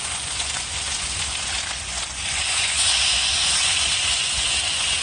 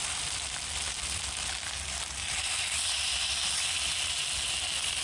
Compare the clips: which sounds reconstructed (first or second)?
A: first